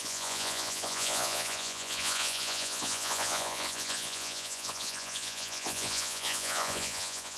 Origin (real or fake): fake